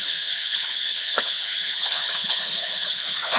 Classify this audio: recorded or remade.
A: remade